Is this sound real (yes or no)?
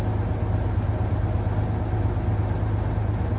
yes